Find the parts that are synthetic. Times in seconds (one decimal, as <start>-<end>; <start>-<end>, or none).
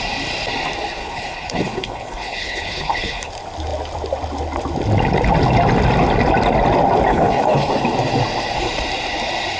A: 1.0-3.3; 7.1-7.7